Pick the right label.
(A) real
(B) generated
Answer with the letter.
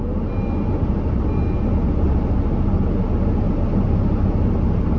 A